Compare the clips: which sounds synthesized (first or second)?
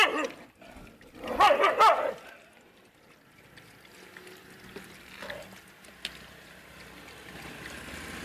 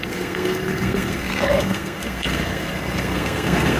second